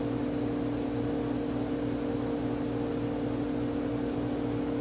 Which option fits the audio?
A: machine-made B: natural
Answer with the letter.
B